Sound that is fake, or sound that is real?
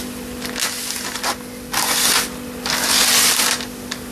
real